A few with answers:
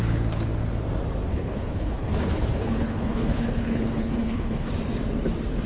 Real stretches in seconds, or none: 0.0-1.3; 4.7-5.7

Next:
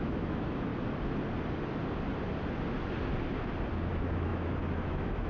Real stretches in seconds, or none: 0.7-3.9

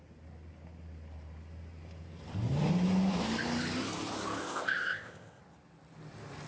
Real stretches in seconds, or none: 0.0-4.4; 5.4-6.5

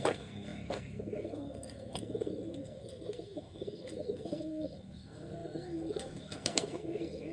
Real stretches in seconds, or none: none

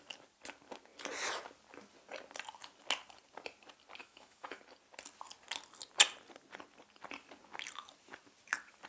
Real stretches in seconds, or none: 0.0-4.0; 4.6-8.9

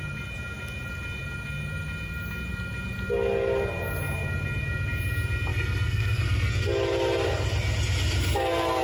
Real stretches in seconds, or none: 0.0-5.5; 6.6-8.8